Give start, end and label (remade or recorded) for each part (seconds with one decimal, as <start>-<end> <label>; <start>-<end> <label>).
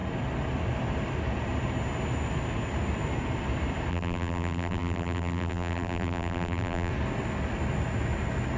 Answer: 0.0-3.9 recorded; 3.9-6.9 remade; 6.9-8.6 recorded